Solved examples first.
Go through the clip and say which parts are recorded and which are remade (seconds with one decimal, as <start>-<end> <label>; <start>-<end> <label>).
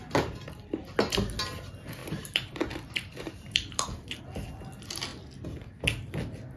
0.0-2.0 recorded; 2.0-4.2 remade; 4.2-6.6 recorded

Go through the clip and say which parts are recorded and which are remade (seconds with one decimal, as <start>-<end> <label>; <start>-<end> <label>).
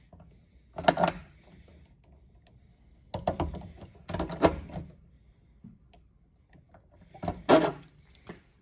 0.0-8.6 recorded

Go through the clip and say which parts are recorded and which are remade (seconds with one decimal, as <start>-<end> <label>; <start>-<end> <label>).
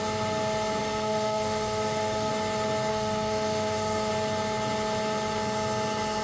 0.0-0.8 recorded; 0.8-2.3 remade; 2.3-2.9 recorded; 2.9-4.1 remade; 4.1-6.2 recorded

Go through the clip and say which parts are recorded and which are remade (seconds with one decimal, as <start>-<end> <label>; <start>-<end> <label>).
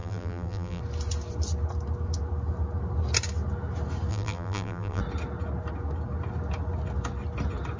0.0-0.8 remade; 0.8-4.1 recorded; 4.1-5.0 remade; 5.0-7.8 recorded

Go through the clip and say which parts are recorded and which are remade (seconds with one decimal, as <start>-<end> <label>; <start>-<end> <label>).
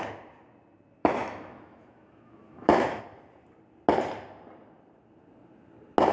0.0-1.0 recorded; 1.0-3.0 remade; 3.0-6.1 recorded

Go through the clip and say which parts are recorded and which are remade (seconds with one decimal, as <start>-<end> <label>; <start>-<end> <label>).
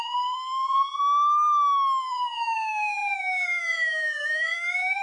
0.0-1.0 remade; 1.0-2.0 recorded; 2.0-5.0 remade